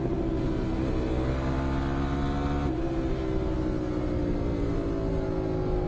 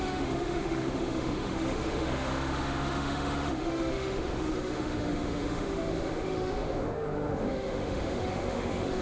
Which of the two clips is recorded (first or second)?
first